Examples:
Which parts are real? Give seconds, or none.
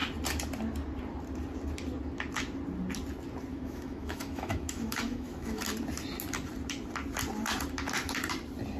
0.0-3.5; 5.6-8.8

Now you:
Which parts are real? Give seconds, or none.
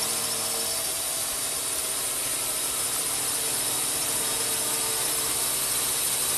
0.0-1.1; 1.8-6.4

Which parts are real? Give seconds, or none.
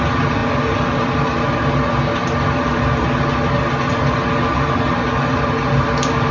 0.0-6.3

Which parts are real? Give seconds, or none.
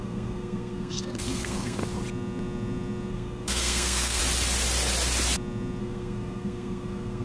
1.8-3.1; 4.2-5.8